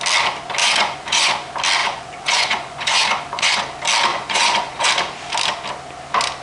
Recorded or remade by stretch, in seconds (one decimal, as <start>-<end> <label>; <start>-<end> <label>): 0.0-0.6 recorded; 0.6-1.3 remade; 1.3-1.8 recorded; 1.8-3.6 remade; 3.6-4.1 recorded; 4.1-4.9 remade; 4.9-6.4 recorded